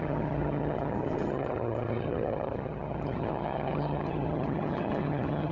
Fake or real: fake